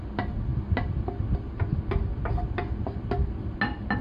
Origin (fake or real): real